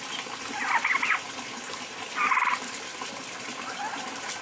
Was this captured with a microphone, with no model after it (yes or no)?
no